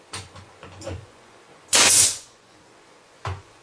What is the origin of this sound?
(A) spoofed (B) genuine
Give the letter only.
A